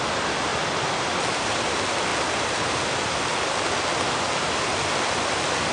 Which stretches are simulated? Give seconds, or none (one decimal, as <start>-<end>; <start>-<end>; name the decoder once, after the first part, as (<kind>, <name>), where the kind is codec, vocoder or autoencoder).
none